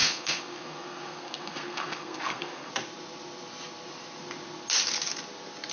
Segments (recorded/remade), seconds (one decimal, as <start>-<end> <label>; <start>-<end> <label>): 0.0-2.7 remade; 2.7-5.7 recorded